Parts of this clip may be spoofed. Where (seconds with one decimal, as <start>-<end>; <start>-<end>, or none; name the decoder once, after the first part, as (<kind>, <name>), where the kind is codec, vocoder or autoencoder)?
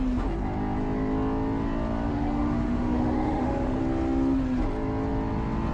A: 2.1-3.8 (autoencoder, DAC-VAE)